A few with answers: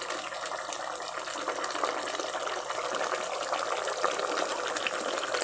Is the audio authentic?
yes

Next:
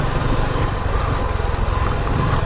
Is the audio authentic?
yes